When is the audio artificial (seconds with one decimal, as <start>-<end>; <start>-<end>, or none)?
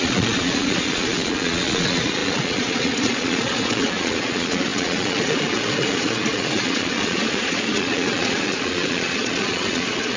0.0-10.2